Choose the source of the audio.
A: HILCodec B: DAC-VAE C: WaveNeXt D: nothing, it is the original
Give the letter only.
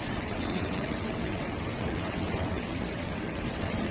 C